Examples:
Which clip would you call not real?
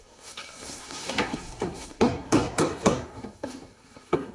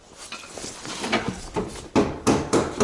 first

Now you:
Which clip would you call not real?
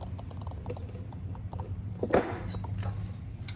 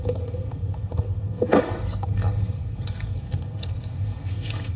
second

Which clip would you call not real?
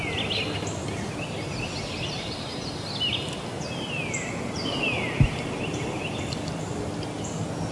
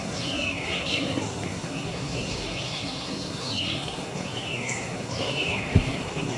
second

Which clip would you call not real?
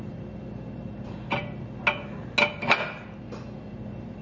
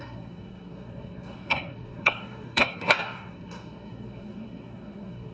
second